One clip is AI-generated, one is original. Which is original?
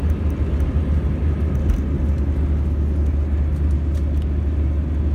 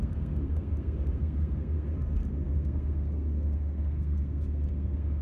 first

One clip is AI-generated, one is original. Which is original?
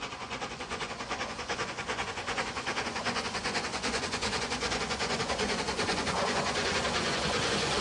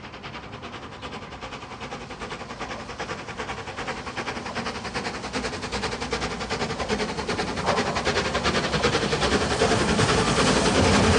second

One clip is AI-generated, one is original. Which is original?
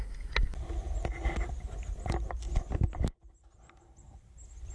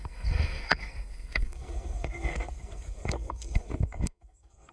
first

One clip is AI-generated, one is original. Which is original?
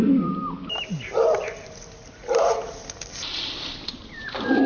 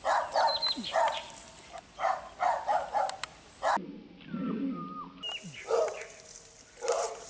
second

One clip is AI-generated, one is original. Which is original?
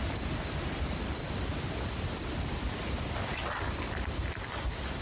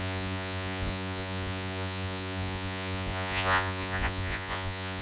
first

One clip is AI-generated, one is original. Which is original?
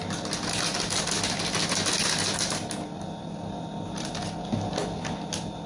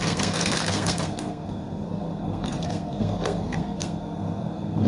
first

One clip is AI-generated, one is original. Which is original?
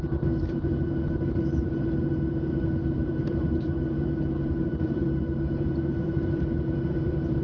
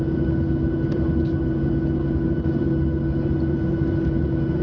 second